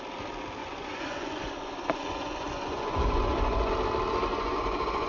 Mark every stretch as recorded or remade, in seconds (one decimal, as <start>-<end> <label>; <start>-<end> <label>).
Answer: 0.0-0.6 recorded; 0.6-3.7 remade; 3.7-4.3 recorded; 4.3-5.1 remade